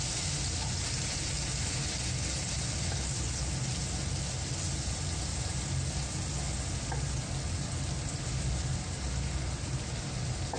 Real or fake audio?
real